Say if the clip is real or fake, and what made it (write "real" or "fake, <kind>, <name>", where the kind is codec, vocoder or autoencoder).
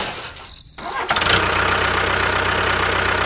real